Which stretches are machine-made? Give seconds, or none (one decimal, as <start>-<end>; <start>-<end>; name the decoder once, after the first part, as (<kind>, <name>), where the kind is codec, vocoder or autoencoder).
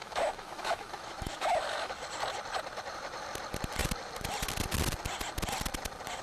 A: 0.0-1.9 (autoencoder, DAC-VAE)